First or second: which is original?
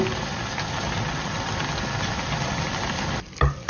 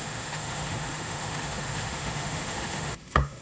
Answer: first